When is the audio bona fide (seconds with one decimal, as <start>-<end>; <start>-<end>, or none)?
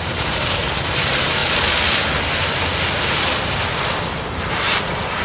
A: 1.4-4.5